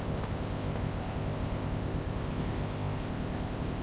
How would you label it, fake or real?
fake